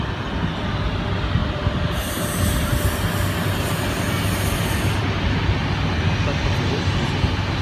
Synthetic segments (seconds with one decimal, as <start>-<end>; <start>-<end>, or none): none